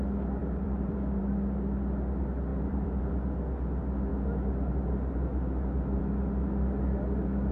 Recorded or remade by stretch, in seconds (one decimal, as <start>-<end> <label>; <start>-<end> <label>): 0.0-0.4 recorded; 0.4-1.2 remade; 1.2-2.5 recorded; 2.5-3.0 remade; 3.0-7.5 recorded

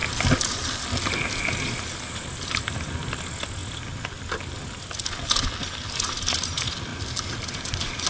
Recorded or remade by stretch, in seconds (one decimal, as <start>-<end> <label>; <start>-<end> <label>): 0.0-8.1 recorded

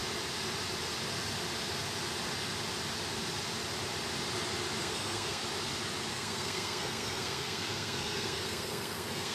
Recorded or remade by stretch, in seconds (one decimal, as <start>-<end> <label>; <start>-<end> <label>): 0.0-4.8 recorded; 4.8-5.4 remade; 5.4-6.1 recorded; 6.1-9.3 remade